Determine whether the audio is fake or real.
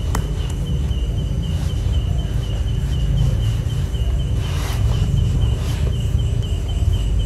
fake